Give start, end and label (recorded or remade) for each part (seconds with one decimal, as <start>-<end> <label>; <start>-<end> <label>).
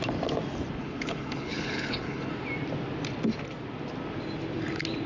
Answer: 0.0-0.8 recorded; 0.8-2.3 remade; 2.3-5.1 recorded